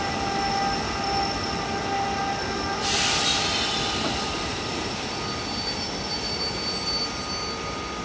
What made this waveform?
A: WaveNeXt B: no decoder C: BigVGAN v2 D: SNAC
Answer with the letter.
B